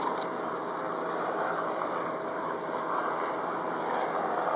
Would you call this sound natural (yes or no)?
yes